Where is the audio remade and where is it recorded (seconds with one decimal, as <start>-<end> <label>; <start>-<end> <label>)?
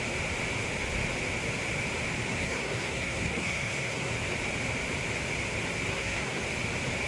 0.0-2.3 recorded; 2.3-4.1 remade; 4.1-5.9 recorded; 5.9-6.4 remade; 6.4-7.1 recorded